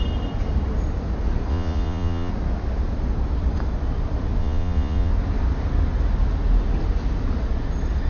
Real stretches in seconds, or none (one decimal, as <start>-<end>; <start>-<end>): 0.0-1.5; 2.3-4.4; 5.1-8.1